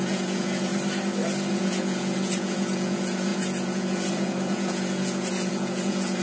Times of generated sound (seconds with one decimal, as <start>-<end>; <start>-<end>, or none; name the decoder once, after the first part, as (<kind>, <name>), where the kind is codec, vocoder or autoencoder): 0.0-0.7 (vocoder, Vocos); 1.5-6.2